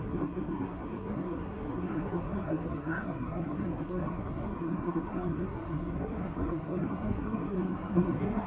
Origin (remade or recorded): remade